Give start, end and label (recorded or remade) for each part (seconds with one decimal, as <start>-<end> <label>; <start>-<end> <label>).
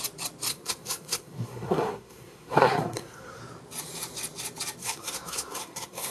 0.0-0.5 recorded; 0.5-3.4 remade; 3.4-4.8 recorded; 4.8-6.1 remade